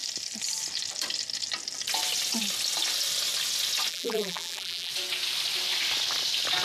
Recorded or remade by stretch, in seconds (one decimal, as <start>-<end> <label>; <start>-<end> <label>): 0.0-3.9 recorded; 3.9-4.9 remade; 4.9-6.6 recorded